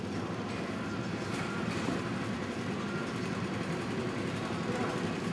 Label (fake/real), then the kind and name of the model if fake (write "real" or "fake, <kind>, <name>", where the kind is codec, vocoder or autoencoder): real